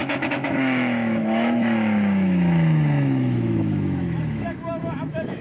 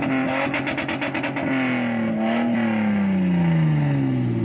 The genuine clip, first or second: second